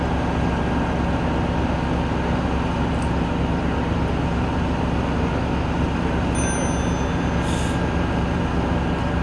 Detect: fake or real real